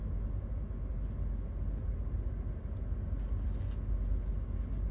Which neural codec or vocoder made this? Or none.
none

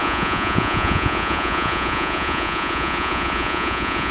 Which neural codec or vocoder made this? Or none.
vocoder, Vocos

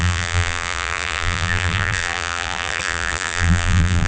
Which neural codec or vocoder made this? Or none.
vocoder, BigVGAN v2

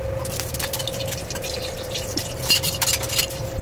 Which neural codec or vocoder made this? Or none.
vocoder, BigVGAN v2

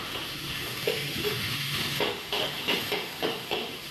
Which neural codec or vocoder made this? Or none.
autoencoder, DAC-VAE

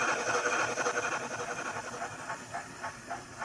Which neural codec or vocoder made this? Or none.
none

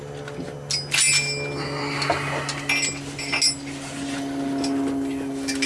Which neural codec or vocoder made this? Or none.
none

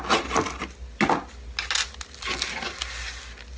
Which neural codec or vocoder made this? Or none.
none